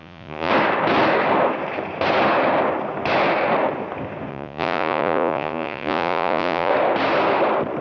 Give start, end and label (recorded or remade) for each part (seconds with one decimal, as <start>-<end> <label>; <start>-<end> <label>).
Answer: 0.0-0.5 remade; 0.5-4.3 recorded; 4.3-6.7 remade; 6.7-7.8 recorded

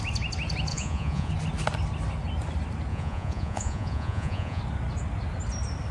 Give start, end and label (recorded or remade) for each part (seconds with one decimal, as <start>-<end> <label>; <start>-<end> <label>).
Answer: 0.0-0.7 recorded; 0.7-1.3 remade; 1.3-2.9 recorded; 2.9-4.6 remade; 4.6-5.9 recorded

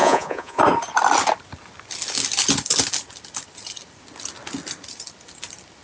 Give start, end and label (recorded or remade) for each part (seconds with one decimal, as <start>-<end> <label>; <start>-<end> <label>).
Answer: 0.0-0.6 remade; 0.6-5.8 recorded

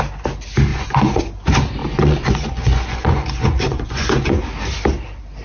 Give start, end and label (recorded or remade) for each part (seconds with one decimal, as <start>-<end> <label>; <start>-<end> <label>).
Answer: 0.0-0.7 recorded; 0.7-1.2 remade; 1.2-1.8 recorded; 1.8-4.4 remade; 4.4-5.4 recorded

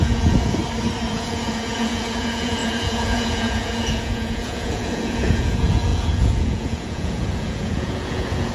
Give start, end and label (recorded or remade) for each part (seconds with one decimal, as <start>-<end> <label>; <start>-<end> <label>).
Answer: 0.0-0.6 remade; 0.6-1.1 recorded; 1.1-8.5 remade